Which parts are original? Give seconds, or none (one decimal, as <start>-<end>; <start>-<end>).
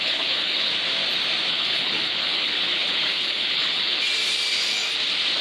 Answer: 0.7-1.5; 4.0-5.4